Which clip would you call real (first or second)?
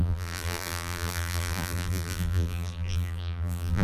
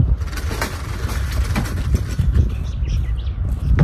second